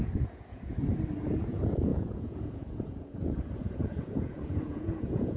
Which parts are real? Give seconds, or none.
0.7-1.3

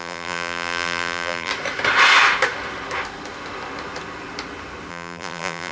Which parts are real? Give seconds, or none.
1.5-4.9

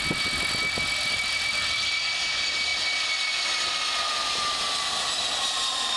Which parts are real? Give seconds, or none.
0.0-6.0

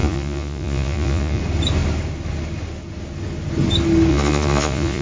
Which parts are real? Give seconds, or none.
1.4-4.1

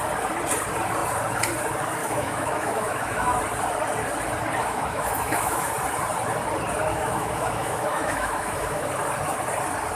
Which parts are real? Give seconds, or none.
0.0-2.0; 3.4-4.6; 5.7-6.9; 8.9-10.0